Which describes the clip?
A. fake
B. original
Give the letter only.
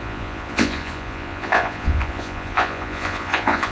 A